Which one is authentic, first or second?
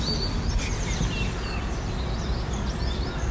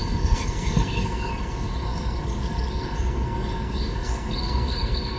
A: first